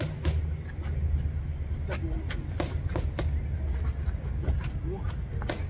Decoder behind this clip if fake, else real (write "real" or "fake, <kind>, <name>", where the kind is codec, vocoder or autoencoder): real